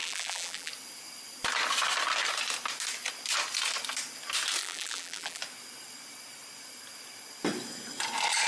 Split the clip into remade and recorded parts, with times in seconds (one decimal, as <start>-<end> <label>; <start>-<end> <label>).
0.0-0.7 remade; 0.7-4.6 recorded; 4.6-5.4 remade; 5.4-8.5 recorded